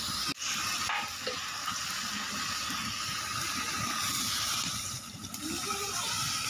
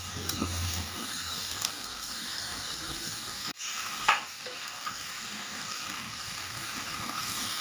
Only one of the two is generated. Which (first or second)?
second